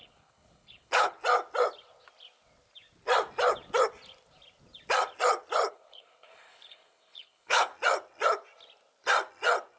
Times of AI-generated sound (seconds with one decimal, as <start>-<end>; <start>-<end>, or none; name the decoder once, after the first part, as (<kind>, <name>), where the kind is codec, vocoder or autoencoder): 0.0-1.2 (codec, HILCodec); 5.7-7.7